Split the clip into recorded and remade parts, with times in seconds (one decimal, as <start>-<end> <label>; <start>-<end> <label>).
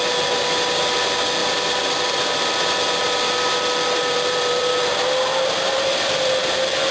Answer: 0.0-1.4 recorded; 1.4-2.2 remade; 2.2-4.0 recorded; 4.0-6.4 remade; 6.4-6.9 recorded